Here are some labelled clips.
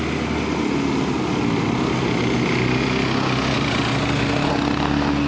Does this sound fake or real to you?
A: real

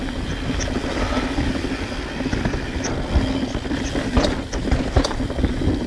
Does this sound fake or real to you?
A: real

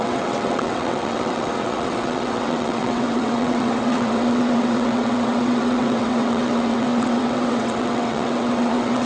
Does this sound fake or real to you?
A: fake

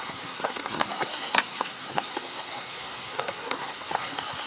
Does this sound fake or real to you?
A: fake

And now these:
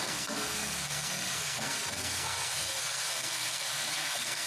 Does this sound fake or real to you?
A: fake